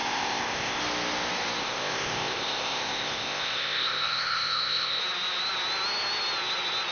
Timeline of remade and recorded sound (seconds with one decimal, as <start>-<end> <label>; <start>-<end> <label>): 0.0-0.8 remade; 0.8-1.6 recorded; 1.6-5.0 remade; 5.0-6.9 recorded